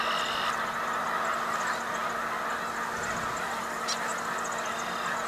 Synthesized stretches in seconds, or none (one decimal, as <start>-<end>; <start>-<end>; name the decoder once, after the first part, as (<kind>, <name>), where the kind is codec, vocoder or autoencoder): none